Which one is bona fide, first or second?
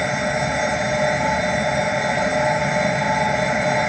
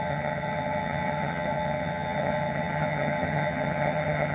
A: first